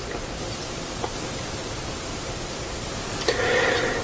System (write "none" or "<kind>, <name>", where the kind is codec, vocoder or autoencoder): vocoder, BigVGAN v2